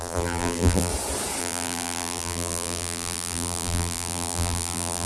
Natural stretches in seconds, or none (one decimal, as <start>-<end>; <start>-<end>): 0.9-1.4